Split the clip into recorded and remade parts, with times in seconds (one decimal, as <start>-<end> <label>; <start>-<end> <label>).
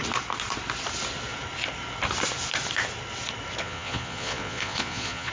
0.0-3.6 recorded; 3.6-5.3 remade